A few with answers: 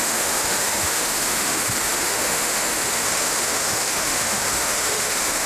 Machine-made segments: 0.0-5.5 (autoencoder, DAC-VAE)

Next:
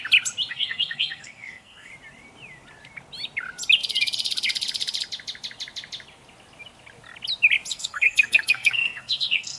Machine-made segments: 0.5-1.9 (codec, SNAC); 7.7-9.6

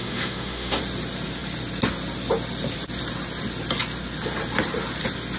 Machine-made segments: 0.0-0.8 (autoencoder, DAC-VAE)

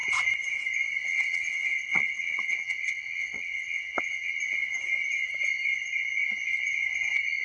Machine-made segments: 1.0-4.3 (vocoder, WaveNeXt)

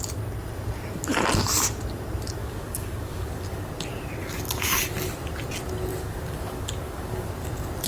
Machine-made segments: 2.4-3.7 (codec, DAC); 4.2-4.9; 5.9-7.3

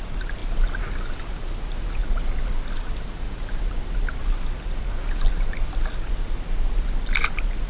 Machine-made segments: none

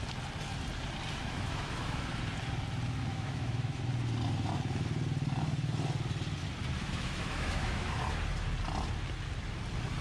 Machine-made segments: 1.2-2.2 (autoencoder, DAC-VAE); 3.1-3.8; 6.8-8.0